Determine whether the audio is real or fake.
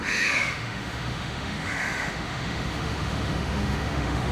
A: fake